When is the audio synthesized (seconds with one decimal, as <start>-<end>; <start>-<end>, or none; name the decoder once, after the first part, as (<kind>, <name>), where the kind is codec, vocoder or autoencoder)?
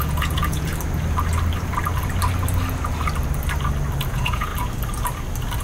0.0-0.7 (vocoder, Vocos); 4.1-4.5